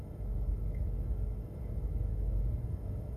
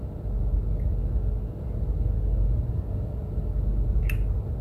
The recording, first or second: second